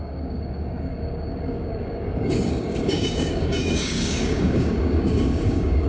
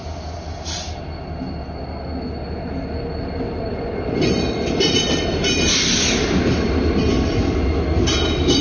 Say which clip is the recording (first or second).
second